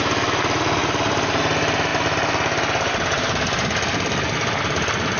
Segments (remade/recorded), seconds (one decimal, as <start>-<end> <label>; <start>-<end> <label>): 0.0-0.8 recorded; 0.8-1.4 remade; 1.4-5.2 recorded